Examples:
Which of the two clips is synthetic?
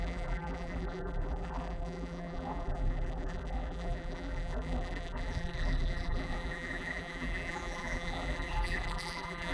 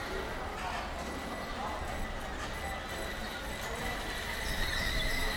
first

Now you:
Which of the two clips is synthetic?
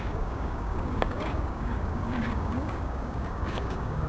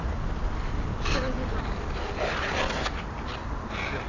first